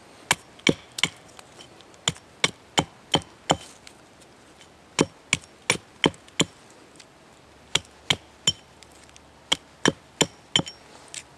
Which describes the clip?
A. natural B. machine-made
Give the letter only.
A